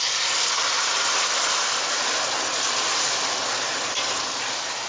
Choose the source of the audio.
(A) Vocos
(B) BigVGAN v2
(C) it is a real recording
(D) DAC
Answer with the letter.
C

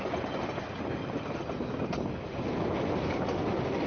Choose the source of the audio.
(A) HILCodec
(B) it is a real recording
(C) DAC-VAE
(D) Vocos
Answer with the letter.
B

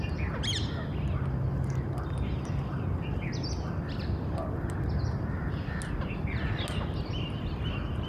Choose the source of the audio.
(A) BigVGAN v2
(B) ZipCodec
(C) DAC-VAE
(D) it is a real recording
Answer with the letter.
D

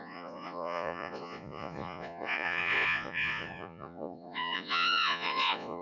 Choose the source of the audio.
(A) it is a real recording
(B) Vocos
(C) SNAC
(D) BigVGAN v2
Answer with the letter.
B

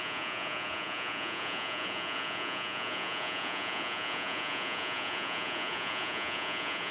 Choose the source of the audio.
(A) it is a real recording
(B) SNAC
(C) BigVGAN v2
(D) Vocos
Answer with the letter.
D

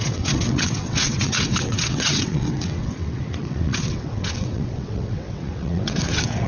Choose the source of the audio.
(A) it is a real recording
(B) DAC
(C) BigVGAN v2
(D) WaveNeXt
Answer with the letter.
D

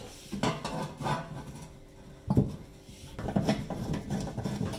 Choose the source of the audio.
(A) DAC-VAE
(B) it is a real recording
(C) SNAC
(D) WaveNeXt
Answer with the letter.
B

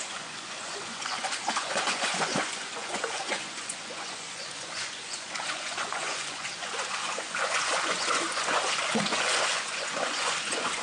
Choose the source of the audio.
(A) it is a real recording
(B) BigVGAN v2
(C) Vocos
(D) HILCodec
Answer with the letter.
C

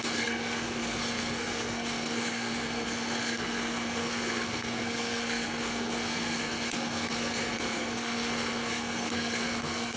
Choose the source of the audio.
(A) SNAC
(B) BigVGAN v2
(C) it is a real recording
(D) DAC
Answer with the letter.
A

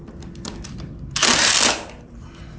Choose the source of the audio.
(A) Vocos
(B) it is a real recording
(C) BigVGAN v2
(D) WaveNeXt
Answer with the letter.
B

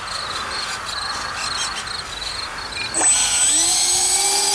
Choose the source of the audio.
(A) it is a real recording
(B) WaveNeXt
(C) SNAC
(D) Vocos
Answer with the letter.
A